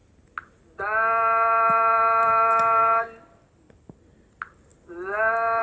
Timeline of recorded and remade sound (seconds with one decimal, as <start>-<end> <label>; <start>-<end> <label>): 0.0-5.6 recorded